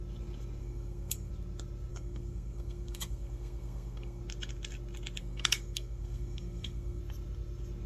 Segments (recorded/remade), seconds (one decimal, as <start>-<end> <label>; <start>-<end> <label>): 0.0-0.6 recorded; 0.6-1.3 remade; 1.3-1.9 recorded; 1.9-4.2 remade; 4.2-5.2 recorded; 5.2-7.0 remade; 7.0-7.9 recorded